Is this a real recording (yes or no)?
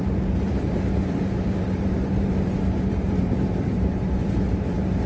no